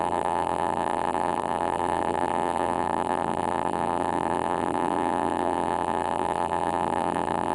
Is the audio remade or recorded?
remade